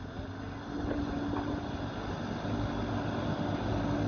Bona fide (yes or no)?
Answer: yes